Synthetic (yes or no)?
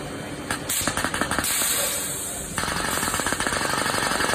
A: no